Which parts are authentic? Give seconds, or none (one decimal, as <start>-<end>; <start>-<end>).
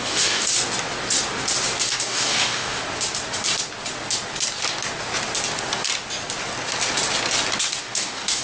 0.5-1.9; 2.8-7.8